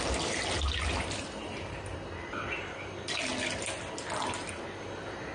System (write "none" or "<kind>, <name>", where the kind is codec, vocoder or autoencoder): none